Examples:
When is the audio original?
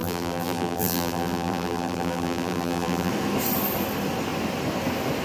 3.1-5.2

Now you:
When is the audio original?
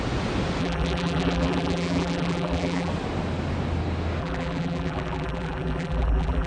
0.0-0.6; 2.9-4.2